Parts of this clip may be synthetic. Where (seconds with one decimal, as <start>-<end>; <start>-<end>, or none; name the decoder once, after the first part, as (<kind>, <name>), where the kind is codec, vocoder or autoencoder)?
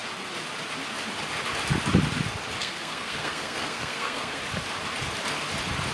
2.6-4.4 (codec, SNAC)